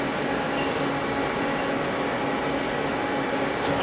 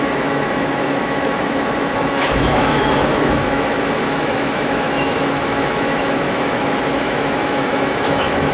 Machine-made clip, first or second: second